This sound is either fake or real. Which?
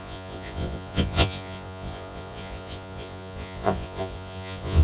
fake